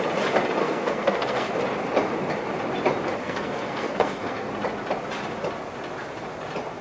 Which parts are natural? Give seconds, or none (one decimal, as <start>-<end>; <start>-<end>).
0.0-0.6; 1.5-3.2; 4.5-6.8